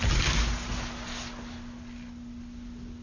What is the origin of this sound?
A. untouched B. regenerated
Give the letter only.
A